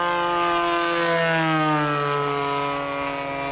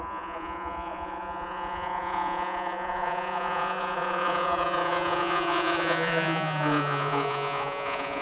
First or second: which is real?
first